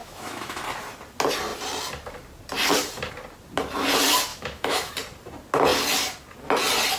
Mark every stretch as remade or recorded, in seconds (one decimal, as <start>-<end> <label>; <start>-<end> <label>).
0.0-0.6 remade; 0.6-4.3 recorded; 4.3-4.9 remade; 4.9-7.0 recorded